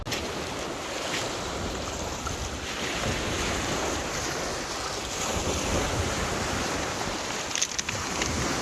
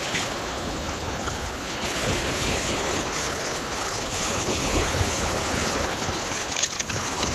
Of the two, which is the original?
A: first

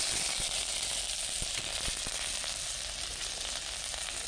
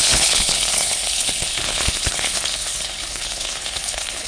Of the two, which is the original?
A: first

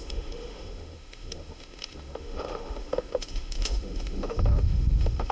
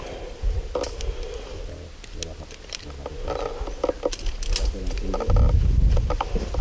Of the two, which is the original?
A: second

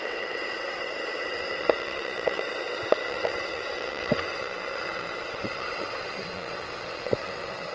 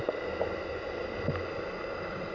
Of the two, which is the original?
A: second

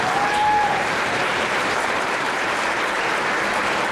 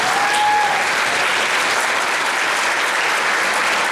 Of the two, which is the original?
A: second